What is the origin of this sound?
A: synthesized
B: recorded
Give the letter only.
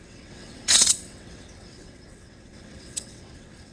A